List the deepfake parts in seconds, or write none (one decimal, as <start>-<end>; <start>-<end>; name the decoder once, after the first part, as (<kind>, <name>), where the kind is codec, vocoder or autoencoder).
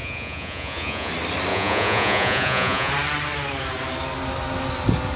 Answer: 0.0-1.1 (vocoder, Vocos); 1.5-2.9